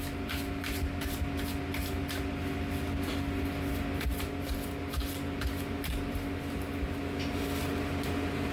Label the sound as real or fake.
real